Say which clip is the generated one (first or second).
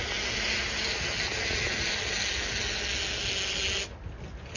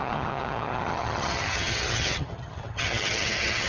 second